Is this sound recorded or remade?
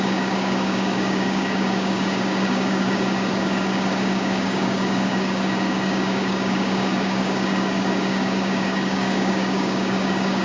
remade